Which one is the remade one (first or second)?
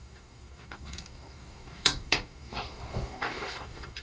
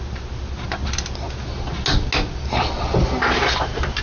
first